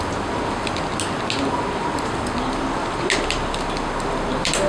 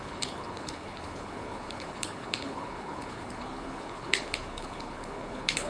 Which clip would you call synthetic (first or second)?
second